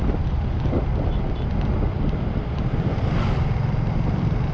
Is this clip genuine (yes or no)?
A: yes